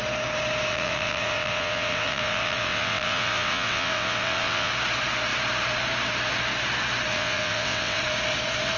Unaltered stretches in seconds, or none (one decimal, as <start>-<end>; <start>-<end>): 0.0-0.7; 4.7-7.1; 8.0-8.8